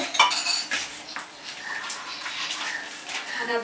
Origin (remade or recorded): remade